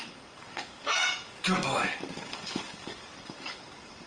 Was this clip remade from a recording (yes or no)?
yes